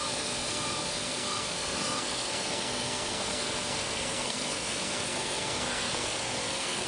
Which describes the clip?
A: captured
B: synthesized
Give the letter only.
B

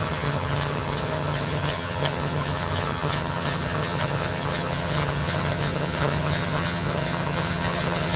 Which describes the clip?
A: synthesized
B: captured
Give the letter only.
A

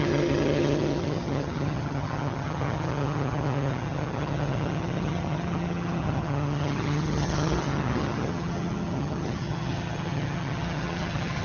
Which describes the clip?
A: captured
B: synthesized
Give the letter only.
B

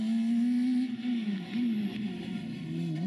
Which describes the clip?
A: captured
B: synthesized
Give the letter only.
A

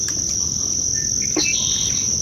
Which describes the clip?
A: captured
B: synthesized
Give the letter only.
A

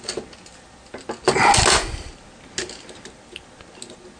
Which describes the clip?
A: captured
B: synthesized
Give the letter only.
A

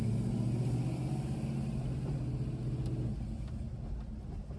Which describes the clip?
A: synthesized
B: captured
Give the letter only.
B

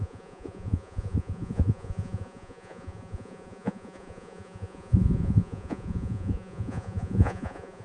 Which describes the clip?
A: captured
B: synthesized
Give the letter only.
B